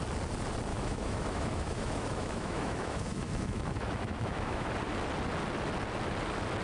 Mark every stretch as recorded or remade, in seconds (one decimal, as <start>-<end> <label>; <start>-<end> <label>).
0.0-0.7 recorded; 0.7-4.7 remade; 4.7-6.6 recorded